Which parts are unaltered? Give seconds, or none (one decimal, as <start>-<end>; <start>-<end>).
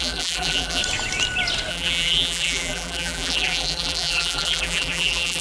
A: 0.8-1.7